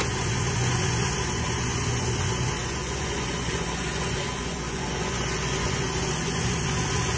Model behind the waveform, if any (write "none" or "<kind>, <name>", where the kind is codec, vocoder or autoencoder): vocoder, Vocos